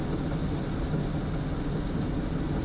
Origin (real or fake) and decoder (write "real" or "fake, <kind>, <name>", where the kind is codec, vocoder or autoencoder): real